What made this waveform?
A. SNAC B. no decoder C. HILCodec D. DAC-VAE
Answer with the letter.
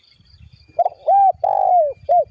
B